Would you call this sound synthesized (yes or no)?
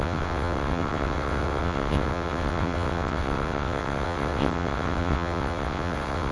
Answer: yes